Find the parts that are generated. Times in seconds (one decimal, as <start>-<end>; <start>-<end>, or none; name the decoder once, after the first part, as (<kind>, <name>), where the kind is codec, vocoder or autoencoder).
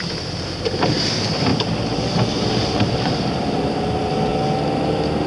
0.0-1.5 (vocoder, BigVGAN v2); 2.3-4.3